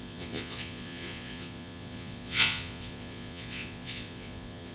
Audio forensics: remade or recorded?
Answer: remade